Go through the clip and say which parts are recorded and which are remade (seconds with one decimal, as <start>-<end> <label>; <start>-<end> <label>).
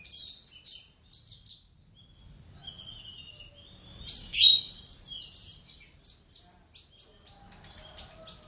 0.0-4.2 recorded; 4.2-4.7 remade; 4.7-8.5 recorded